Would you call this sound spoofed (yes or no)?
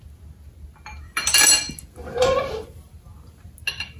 no